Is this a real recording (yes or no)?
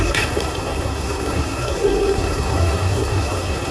no